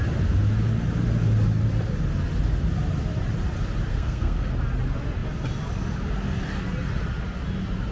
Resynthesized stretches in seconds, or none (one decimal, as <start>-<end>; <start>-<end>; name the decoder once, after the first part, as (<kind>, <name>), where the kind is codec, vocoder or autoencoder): 3.9-4.5 (codec, SNAC)